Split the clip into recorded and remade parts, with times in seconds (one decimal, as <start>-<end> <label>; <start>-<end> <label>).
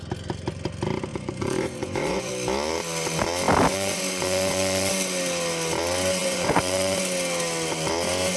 0.0-1.1 recorded; 1.1-2.3 remade; 2.3-3.7 recorded; 3.7-4.9 remade; 4.9-6.2 recorded; 6.2-7.0 remade; 7.0-8.4 recorded